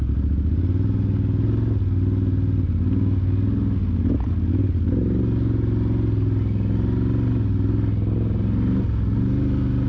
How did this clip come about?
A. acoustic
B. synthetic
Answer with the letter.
A